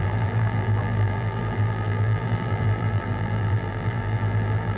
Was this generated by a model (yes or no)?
yes